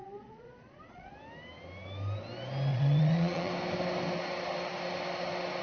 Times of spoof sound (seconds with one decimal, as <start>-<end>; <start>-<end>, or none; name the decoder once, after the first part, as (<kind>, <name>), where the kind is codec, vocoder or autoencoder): 0.0-1.1 (vocoder, Vocos); 2.7-3.5